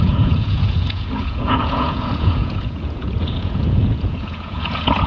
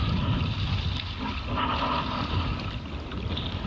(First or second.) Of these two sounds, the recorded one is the second